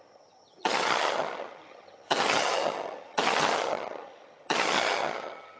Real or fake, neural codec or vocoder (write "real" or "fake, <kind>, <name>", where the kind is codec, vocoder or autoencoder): fake, vocoder, HiFi-GAN